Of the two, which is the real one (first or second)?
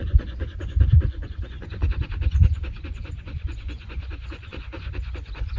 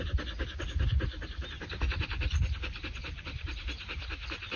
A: second